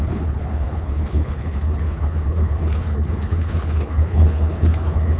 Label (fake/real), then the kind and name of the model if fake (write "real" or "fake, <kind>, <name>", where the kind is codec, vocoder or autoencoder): fake, codec, HILCodec